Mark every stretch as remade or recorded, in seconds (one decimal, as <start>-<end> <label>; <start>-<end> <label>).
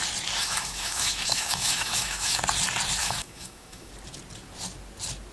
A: 0.0-0.4 recorded; 0.4-2.4 remade; 2.4-3.0 recorded; 3.0-3.9 remade; 3.9-5.3 recorded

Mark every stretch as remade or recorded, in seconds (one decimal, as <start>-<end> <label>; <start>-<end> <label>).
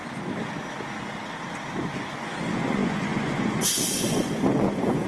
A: 0.0-2.1 recorded; 2.1-5.1 remade